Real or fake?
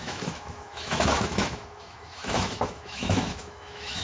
fake